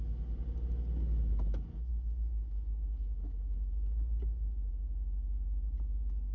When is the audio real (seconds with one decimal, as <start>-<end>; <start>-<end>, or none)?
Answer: 0.0-6.3